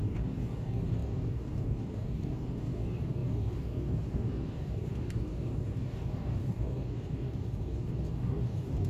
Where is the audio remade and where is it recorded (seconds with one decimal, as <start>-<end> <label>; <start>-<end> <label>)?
0.0-8.9 remade